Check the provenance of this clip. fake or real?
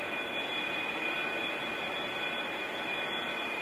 real